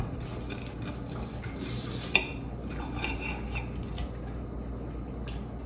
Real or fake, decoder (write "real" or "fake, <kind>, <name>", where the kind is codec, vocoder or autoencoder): real